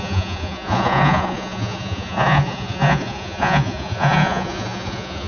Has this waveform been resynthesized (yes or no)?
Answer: yes